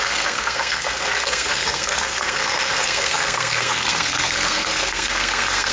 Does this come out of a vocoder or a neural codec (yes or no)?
yes